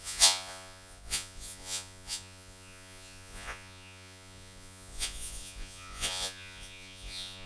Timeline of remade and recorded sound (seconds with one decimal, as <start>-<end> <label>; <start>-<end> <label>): 0.0-7.5 remade